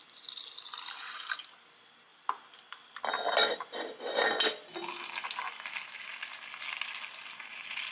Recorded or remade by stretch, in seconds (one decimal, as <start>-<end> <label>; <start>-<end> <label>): 0.0-7.9 recorded

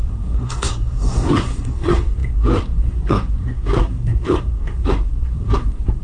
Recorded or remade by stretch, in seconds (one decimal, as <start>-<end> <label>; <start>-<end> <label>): 0.0-6.0 remade